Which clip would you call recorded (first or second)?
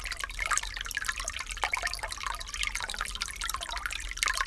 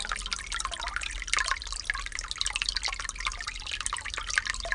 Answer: second